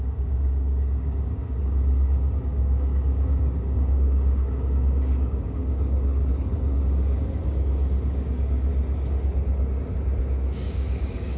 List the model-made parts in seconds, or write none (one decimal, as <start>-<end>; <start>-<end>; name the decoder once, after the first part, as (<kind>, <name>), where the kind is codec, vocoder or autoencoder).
0.0-8.7 (codec, DAC); 10.2-11.4